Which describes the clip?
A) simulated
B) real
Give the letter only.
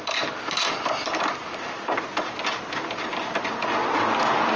B